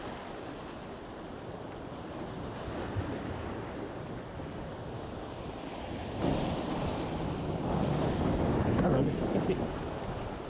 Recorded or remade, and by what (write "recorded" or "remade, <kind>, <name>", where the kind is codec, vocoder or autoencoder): recorded